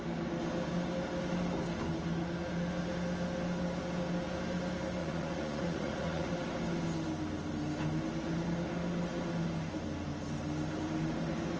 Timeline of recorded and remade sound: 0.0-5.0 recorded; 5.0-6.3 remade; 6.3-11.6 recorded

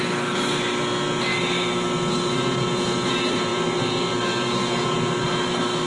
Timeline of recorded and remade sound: 0.0-5.9 recorded

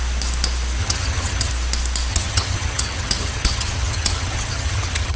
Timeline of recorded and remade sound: 0.0-0.8 recorded; 0.8-1.5 remade; 1.5-2.1 recorded; 2.1-5.2 remade

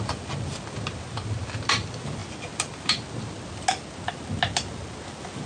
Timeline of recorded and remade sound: 0.0-5.5 recorded